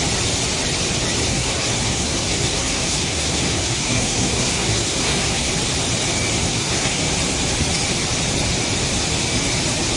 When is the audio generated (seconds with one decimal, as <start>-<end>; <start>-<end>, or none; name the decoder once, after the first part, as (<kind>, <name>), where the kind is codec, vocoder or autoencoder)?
1.3-5.5 (codec, SNAC); 6.3-7.0

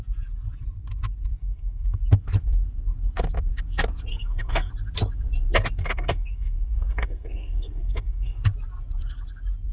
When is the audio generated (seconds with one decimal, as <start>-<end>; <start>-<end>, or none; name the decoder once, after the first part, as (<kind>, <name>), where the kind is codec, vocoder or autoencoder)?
1.4-2.0 (codec, SNAC); 4.1-4.7; 5.8-8.4

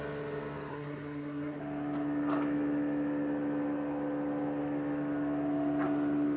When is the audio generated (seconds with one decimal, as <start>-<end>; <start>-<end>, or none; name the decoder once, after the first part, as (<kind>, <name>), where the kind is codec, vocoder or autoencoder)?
0.7-1.6 (codec, SNAC)

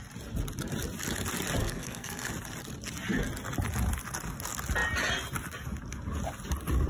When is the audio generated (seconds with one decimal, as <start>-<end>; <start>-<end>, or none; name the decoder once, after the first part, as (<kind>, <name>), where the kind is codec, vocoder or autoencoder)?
1.6-2.3 (codec, SNAC)